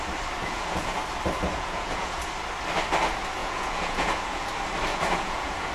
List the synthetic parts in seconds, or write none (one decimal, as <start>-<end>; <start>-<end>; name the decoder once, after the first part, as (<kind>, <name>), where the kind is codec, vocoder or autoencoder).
0.4-1.0 (vocoder, Vocos); 1.5-2.2; 3.4-4.5; 4.9-5.7